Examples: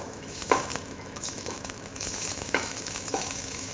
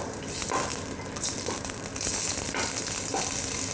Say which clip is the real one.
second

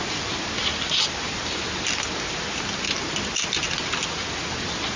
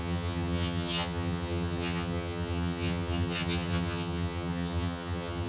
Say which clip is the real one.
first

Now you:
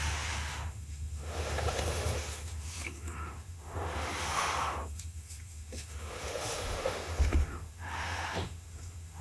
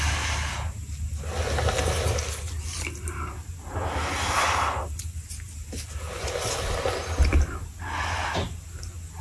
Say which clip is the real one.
second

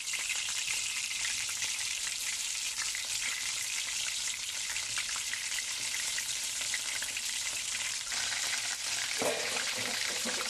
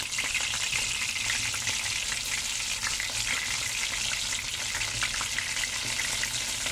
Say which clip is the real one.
second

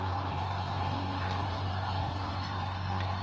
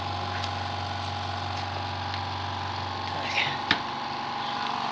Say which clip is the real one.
second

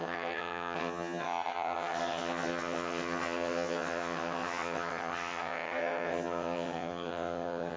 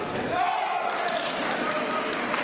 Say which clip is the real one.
second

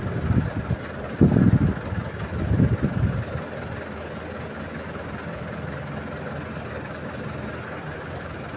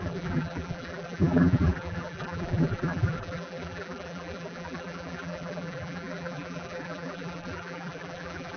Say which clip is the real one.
first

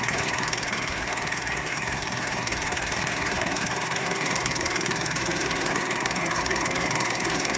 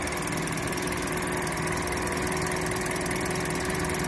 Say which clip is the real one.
second